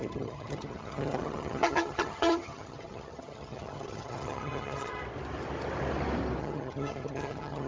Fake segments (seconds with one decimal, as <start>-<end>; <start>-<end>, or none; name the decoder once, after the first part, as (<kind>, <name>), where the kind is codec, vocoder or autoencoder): 0.0-4.9 (vocoder, HiFi-GAN); 6.4-7.7